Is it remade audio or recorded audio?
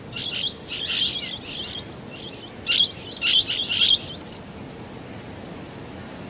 recorded